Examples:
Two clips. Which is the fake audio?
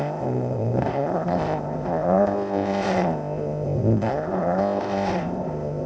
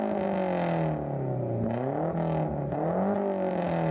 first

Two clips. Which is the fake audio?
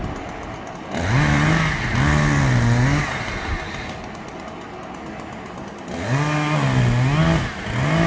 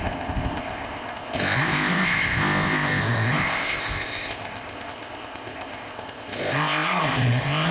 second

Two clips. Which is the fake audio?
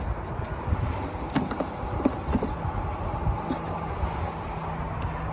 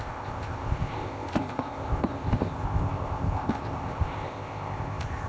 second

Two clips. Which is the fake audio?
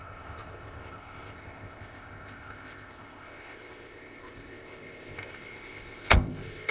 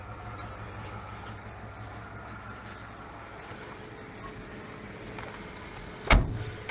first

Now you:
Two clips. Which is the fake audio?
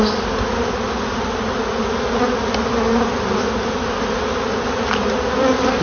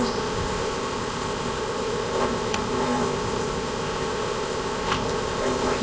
second